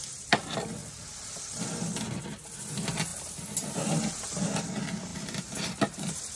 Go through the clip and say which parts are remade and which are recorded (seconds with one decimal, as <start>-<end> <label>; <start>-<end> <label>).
0.0-0.8 recorded; 0.8-1.6 remade; 1.6-3.1 recorded; 3.1-4.1 remade; 4.1-5.1 recorded; 5.1-6.4 remade